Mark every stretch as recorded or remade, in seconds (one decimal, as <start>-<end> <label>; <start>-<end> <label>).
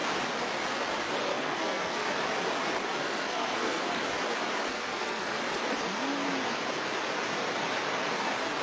0.0-1.3 recorded; 1.3-2.1 remade; 2.1-3.0 recorded; 3.0-3.8 remade; 3.8-4.7 recorded; 4.7-5.4 remade; 5.4-8.6 recorded